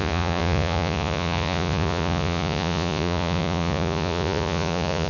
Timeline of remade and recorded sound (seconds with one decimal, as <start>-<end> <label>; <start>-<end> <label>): 0.0-5.1 remade